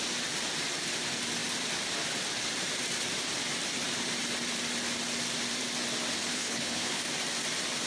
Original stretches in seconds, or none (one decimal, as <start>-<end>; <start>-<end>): 0.0-6.3; 7.0-7.9